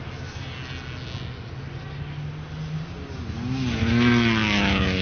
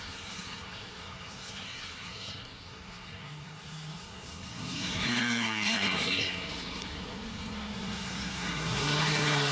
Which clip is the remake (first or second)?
second